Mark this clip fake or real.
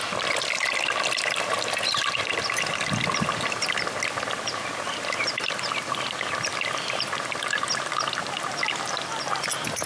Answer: real